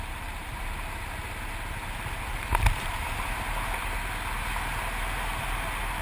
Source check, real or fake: real